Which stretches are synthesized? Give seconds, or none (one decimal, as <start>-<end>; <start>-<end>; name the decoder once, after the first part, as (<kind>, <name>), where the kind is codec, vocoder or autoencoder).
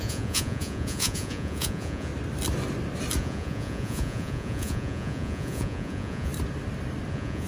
0.0-2.1 (vocoder, Vocos); 3.2-6.3; 7.1-7.5